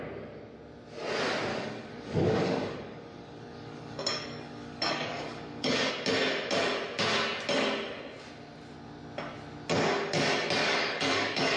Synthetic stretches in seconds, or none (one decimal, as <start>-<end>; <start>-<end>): 1.5-5.9; 10.6-11.6